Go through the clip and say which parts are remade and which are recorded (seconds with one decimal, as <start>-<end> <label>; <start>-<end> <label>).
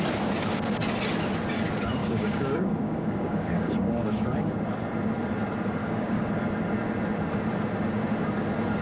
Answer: 0.0-2.0 recorded; 2.0-4.5 remade; 4.5-5.8 recorded; 5.8-6.3 remade; 6.3-8.8 recorded